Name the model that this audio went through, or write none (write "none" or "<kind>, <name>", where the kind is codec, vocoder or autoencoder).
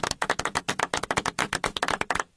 none